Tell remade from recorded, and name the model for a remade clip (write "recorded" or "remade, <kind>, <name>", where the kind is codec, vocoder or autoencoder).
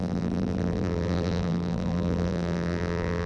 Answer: remade, vocoder, BigVGAN v2